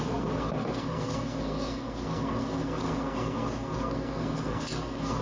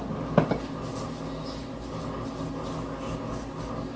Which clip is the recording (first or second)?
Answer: second